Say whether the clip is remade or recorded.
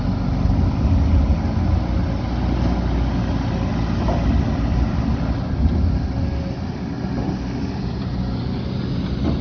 recorded